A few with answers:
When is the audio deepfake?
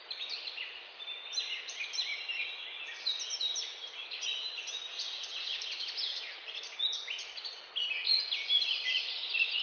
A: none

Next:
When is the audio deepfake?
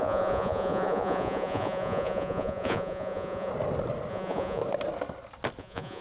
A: 0.0-3.5 (vocoder, Vocos); 4.1-4.6; 5.6-6.0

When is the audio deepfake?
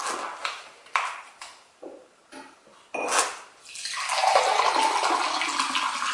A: 0.4-2.2 (vocoder, BigVGAN v2)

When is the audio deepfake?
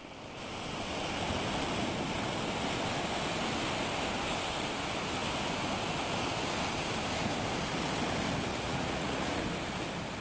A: 8.5-9.4 (vocoder, Vocos)